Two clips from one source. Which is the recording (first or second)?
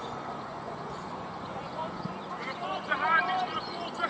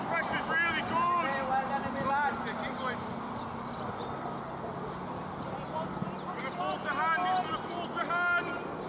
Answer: second